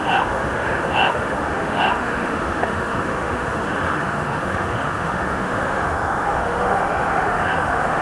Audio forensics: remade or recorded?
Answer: remade